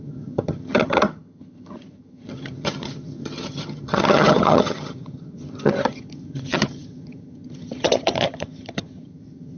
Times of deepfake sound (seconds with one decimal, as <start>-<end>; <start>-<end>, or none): 0.0-9.6